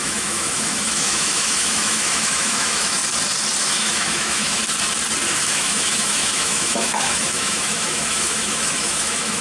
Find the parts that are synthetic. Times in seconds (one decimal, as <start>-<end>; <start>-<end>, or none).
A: 0.0-3.0; 3.6-4.6; 5.3-9.4